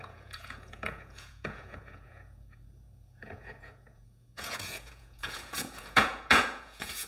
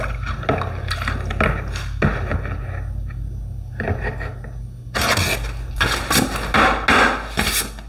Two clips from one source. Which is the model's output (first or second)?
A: first